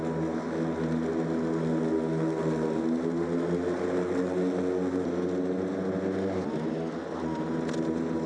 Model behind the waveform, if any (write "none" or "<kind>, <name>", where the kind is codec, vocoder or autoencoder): none